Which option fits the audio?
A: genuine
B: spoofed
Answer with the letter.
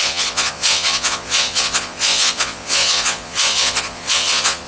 B